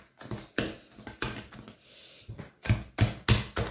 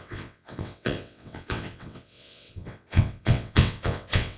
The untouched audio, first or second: first